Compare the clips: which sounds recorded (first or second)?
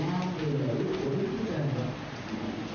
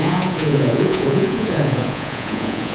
first